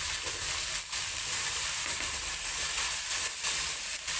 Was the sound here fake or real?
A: real